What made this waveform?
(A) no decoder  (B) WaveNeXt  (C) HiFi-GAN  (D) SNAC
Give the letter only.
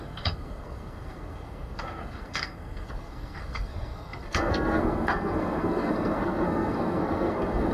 D